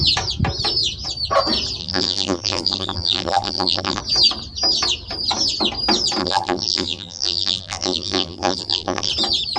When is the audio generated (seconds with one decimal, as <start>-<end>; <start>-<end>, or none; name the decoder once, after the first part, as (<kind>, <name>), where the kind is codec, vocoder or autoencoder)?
1.8-4.0 (vocoder, BigVGAN v2); 6.2-9.1